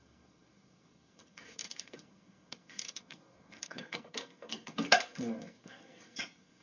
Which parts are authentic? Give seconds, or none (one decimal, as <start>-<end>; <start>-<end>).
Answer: none